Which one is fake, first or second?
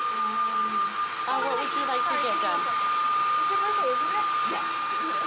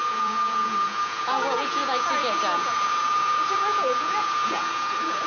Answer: second